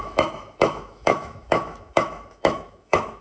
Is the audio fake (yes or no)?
yes